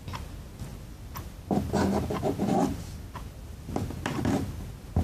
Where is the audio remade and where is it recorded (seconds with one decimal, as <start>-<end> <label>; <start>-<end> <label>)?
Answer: 0.0-0.7 recorded; 0.7-3.7 remade; 3.7-5.0 recorded